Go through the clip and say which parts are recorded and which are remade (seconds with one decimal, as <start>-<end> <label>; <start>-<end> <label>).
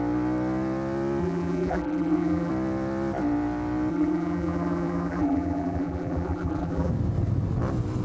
0.0-1.2 recorded; 1.2-2.5 remade; 2.5-3.9 recorded; 3.9-6.9 remade; 6.9-8.0 recorded